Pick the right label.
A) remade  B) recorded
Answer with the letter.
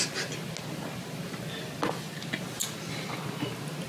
B